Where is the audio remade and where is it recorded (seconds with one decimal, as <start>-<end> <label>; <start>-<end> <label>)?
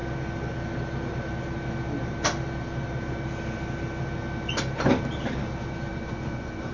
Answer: 0.0-5.9 recorded; 5.9-6.7 remade